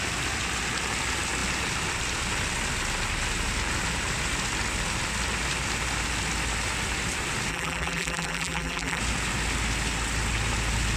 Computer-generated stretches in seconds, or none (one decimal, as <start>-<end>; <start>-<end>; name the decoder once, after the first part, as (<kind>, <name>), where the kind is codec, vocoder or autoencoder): 7.5-9.0 (vocoder, BigVGAN v2)